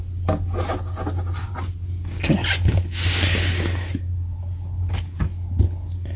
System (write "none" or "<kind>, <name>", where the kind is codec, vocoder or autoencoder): none